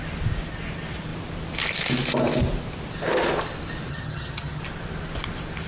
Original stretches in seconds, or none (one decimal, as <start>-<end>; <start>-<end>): 0.0-3.9; 4.6-5.7